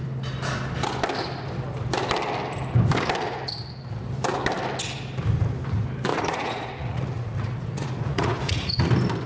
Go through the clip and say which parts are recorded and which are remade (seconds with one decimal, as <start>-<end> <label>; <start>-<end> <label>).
0.0-6.1 recorded; 6.1-8.8 remade; 8.8-9.3 recorded